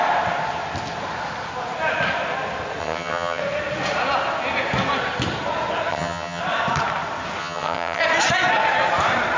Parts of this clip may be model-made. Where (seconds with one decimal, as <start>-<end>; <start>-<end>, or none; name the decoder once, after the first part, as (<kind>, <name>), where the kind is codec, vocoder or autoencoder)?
2.8-3.4 (vocoder, HiFi-GAN); 5.9-6.4; 7.4-8.0

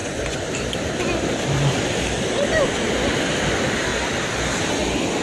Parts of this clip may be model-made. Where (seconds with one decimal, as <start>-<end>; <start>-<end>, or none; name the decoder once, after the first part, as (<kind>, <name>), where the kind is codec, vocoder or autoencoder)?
0.0-0.5 (vocoder, Vocos)

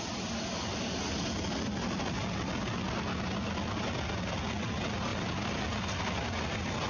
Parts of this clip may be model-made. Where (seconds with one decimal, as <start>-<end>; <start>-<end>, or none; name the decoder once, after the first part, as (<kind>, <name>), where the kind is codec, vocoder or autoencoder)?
none

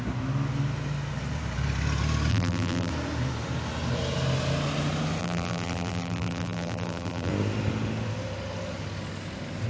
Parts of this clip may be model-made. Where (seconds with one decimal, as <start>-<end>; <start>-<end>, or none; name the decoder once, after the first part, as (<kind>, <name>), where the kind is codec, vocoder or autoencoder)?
2.3-2.9 (vocoder, BigVGAN v2); 5.2-7.3

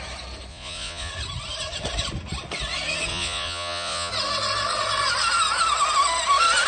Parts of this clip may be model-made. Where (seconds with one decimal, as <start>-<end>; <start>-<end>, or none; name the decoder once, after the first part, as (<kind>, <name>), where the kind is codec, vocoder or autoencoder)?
0.5-1.1 (vocoder, Vocos); 3.1-4.1